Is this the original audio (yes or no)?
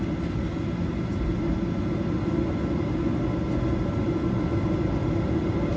yes